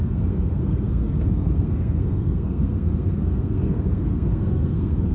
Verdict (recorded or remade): remade